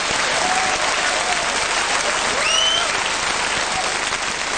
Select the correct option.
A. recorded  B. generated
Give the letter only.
A